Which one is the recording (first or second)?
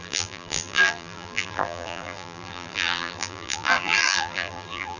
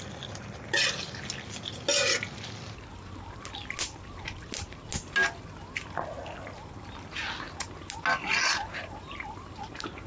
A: second